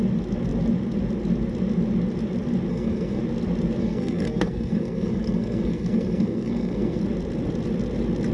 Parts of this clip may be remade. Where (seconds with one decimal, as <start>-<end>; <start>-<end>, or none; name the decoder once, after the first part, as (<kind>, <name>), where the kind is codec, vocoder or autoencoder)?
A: 2.7-3.2 (codec, SNAC); 3.8-7.0